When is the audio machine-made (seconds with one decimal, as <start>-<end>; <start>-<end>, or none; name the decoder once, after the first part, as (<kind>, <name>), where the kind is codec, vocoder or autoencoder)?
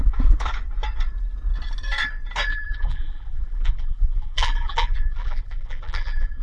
2.5-6.4 (vocoder, BigVGAN v2)